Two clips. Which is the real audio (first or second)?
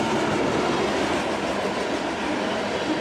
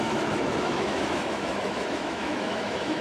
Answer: first